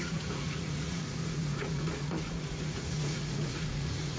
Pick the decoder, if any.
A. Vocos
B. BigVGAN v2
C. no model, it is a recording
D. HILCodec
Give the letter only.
A